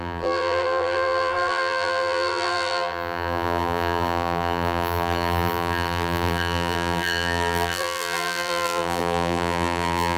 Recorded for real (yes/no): no